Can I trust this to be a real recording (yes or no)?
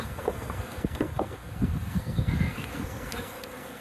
no